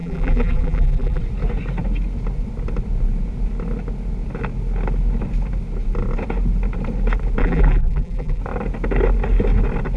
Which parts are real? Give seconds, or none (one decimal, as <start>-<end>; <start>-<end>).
1.2-7.4; 8.4-10.0